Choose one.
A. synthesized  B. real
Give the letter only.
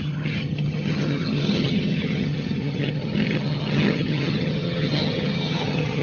A